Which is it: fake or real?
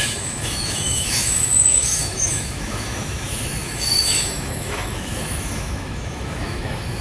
fake